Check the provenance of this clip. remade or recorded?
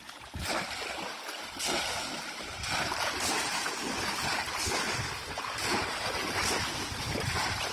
remade